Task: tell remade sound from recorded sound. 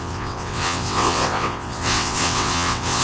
remade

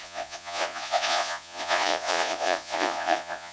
remade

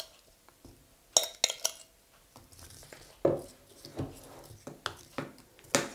recorded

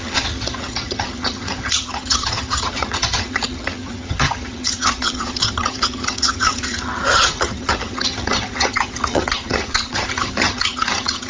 remade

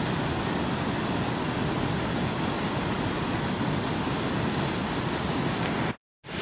recorded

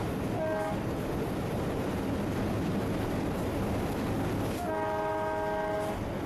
recorded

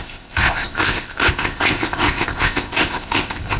remade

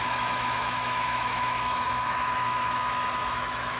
remade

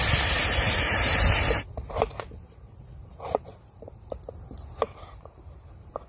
remade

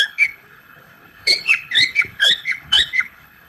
remade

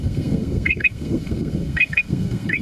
remade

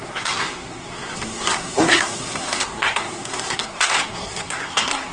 remade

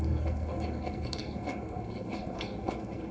remade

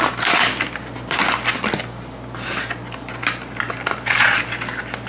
recorded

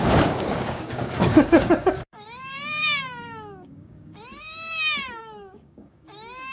remade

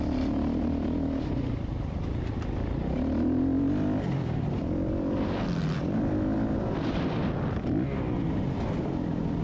remade